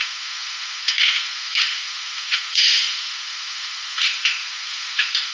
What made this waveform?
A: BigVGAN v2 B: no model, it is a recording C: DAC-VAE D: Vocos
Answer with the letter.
C